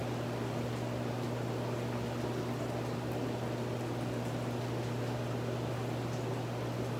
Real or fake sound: real